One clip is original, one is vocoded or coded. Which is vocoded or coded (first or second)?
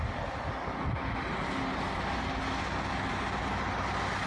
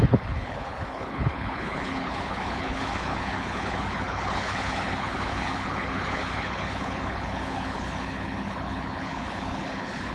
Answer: second